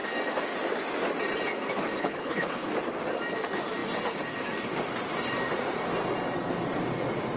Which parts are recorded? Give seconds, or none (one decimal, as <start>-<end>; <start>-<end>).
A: 0.0-2.0; 2.7-7.4